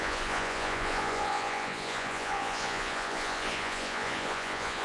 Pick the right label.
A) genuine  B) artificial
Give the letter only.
B